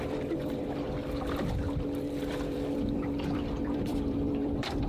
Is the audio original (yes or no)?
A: no